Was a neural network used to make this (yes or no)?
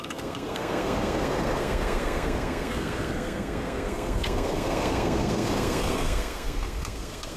yes